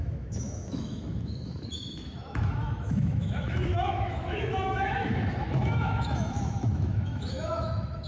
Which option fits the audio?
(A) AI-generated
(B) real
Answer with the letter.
A